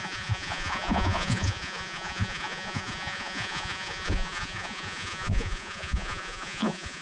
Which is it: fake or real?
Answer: fake